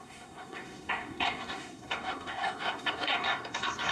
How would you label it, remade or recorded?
remade